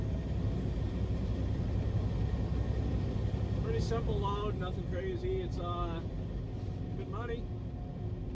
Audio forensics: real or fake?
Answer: real